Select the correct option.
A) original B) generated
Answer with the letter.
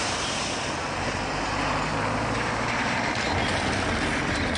A